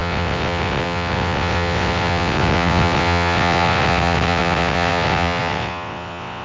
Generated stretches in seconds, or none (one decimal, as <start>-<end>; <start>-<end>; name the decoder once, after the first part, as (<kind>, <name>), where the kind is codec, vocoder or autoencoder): 0.0-6.4 (vocoder, WaveNeXt)